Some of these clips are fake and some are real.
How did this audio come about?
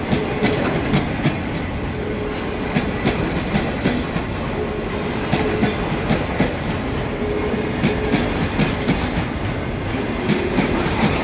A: real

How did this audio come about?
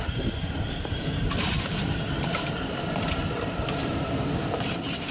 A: fake